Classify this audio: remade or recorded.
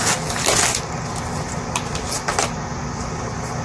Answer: recorded